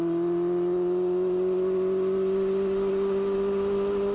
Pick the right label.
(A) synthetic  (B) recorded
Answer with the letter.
B